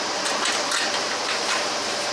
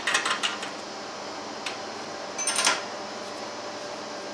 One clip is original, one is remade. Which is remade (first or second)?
first